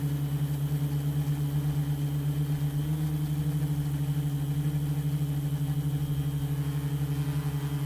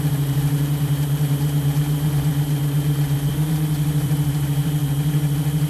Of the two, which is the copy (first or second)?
second